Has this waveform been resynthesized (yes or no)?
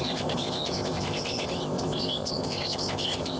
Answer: yes